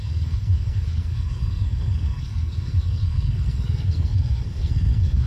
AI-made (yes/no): yes